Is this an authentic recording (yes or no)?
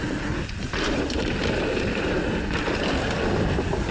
yes